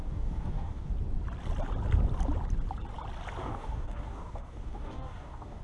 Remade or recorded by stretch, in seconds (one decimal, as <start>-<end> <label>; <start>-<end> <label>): 0.0-0.9 remade; 0.9-3.4 recorded; 3.4-5.6 remade